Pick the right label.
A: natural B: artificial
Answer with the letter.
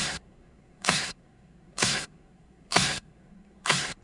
B